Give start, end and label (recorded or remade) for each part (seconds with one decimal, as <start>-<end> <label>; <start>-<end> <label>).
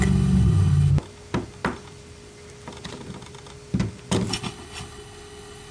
0.0-0.9 remade; 0.9-4.3 recorded; 4.3-5.7 remade